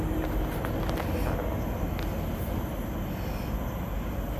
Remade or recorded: recorded